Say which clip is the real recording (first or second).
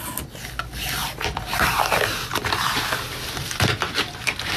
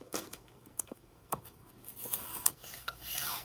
first